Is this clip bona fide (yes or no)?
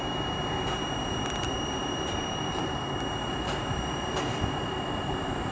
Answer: yes